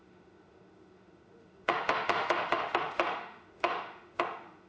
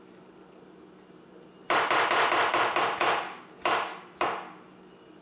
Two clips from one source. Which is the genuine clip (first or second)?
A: second